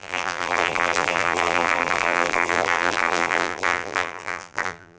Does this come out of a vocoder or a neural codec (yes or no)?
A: yes